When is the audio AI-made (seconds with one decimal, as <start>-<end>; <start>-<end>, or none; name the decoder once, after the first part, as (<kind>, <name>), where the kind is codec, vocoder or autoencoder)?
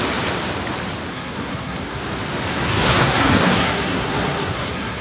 1.1-2.0 (codec, SNAC); 2.5-5.0